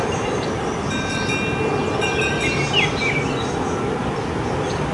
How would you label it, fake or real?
real